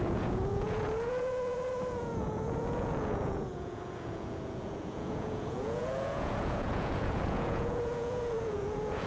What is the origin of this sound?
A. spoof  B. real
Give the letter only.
A